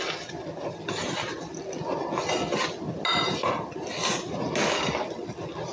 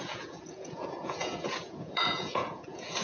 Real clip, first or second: first